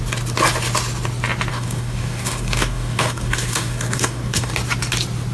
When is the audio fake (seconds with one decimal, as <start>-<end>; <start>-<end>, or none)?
1.5-4.5